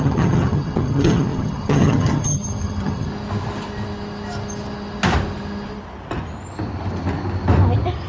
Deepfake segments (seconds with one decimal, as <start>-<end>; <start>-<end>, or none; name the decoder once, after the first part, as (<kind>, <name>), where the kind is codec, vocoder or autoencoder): 0.0-3.1 (vocoder, HiFi-GAN)